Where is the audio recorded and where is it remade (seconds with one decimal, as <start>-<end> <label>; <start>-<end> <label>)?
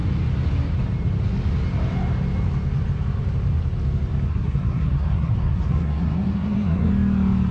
0.0-4.3 recorded; 4.3-6.9 remade; 6.9-7.5 recorded